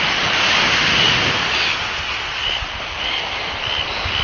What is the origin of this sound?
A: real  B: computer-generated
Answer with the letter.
A